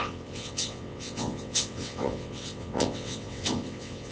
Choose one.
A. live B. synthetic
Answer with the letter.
B